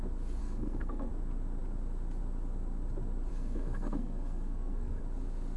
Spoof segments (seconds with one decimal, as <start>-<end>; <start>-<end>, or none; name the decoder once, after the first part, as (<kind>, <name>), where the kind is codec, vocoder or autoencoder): 0.4-1.1 (codec, SNAC); 3.3-5.0